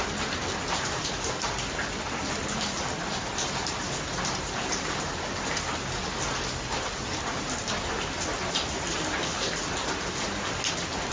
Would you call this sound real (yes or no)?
yes